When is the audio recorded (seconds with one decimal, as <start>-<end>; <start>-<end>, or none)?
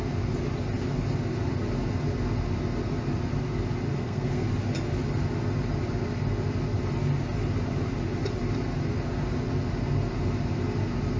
0.0-3.9; 4.5-11.2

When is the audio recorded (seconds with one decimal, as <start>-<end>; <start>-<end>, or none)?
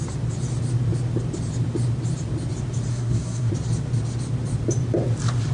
0.0-2.9; 3.5-5.5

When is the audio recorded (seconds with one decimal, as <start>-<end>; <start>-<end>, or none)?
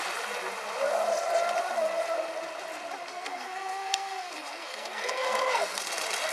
0.0-3.1; 5.8-6.3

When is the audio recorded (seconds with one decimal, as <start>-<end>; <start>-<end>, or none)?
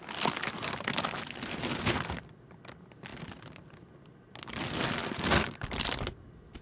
0.0-6.6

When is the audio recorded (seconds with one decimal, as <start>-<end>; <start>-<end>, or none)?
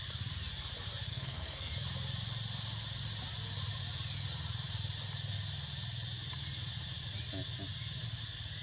0.0-1.1; 1.7-8.6